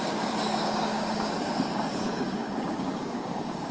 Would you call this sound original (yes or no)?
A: no